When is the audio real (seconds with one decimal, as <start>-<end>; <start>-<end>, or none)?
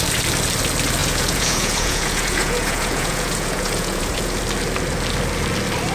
0.0-1.0; 4.4-5.9